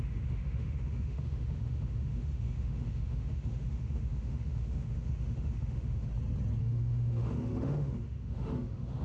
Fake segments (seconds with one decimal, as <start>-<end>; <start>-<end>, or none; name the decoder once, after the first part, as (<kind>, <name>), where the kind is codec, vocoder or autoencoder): 0.0-6.1 (autoencoder, DAC-VAE); 6.6-9.0